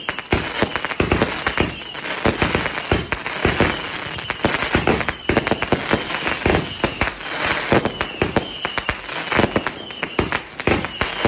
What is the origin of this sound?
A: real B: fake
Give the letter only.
A